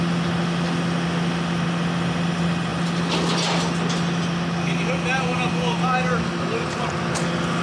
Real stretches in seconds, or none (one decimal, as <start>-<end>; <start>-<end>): 0.0-7.6